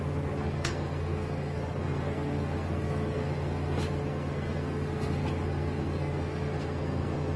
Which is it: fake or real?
fake